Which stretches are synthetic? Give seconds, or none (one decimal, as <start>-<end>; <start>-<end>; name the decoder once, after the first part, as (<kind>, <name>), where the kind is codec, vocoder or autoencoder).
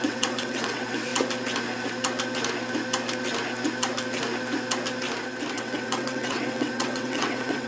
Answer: 0.0-1.1 (vocoder, WaveNeXt); 5.5-7.7